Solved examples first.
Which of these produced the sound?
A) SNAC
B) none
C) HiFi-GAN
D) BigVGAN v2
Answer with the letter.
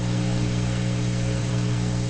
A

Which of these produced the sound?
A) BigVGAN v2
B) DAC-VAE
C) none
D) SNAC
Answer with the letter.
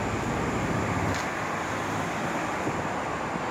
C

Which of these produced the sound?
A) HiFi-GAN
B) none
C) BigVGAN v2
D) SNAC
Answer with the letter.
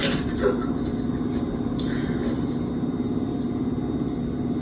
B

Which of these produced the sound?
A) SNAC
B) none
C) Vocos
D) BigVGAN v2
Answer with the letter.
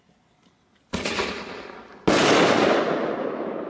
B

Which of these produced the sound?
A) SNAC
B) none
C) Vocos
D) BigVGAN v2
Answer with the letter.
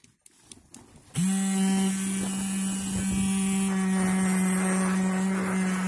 B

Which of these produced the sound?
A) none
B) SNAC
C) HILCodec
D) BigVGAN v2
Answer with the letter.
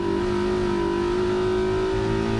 A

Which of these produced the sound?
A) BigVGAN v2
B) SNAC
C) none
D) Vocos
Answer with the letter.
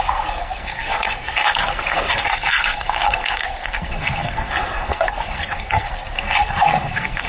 B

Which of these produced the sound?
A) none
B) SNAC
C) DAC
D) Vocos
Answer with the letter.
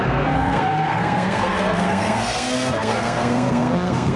B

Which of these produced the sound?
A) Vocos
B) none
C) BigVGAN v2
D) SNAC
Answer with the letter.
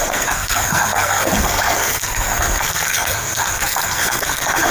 D